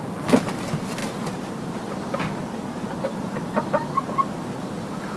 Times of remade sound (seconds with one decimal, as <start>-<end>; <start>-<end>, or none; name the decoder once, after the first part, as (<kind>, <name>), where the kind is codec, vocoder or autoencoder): none